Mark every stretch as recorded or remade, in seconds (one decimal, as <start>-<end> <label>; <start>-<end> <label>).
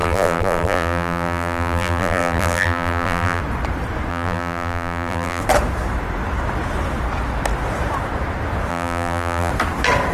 0.0-3.4 remade; 3.4-4.1 recorded; 4.1-5.4 remade; 5.4-8.7 recorded; 8.7-9.5 remade; 9.5-10.1 recorded